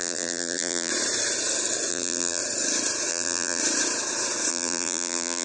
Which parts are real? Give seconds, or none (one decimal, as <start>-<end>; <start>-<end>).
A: 0.9-1.9; 2.4-3.1; 3.6-4.5